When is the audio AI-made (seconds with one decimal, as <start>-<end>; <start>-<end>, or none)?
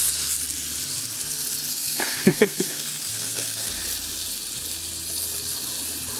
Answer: 1.7-3.7